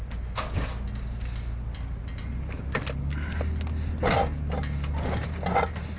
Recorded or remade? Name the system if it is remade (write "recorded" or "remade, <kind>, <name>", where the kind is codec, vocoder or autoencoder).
recorded